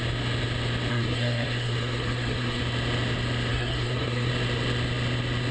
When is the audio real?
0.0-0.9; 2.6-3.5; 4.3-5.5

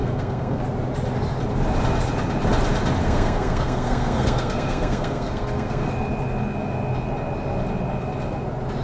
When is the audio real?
0.6-3.0; 5.9-8.8

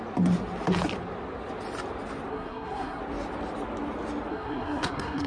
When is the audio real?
0.0-2.3; 3.0-4.3

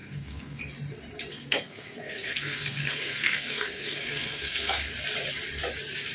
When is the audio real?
0.6-1.3; 4.9-6.1

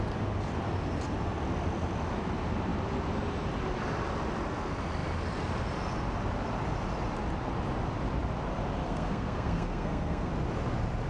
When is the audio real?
0.0-8.8; 10.3-11.1